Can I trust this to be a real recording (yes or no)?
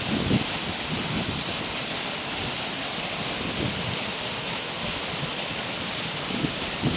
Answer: yes